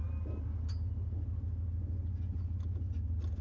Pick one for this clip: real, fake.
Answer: real